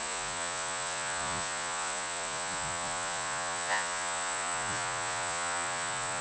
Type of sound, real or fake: fake